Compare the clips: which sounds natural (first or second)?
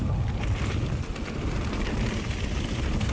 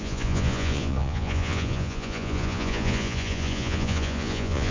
first